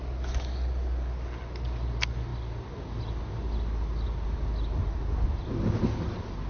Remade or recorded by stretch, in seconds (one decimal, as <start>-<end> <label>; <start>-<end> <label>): 0.0-6.5 recorded